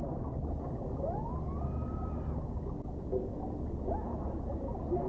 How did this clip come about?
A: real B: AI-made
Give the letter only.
A